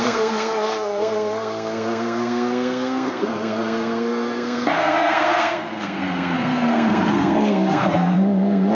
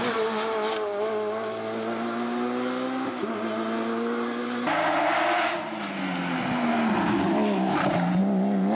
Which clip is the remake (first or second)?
first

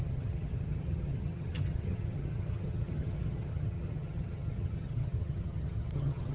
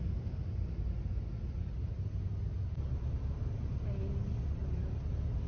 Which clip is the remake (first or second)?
first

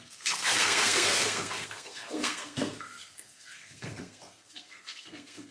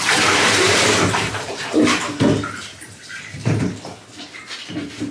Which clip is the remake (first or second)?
first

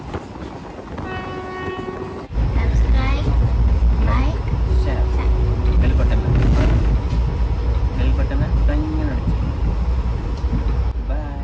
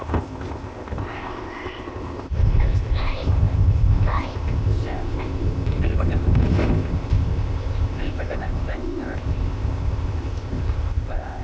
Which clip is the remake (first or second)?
second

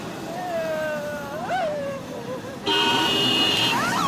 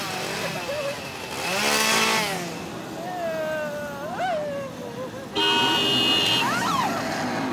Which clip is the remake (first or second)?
first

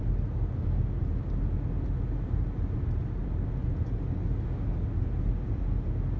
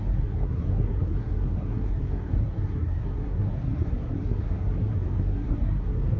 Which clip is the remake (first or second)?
second